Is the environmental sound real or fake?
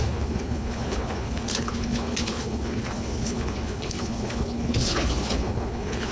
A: fake